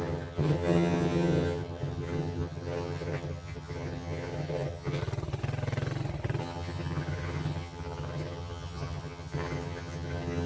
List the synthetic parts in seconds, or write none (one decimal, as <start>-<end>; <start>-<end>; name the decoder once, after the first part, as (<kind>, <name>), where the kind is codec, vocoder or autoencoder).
0.0-5.0 (vocoder, HiFi-GAN); 6.4-10.5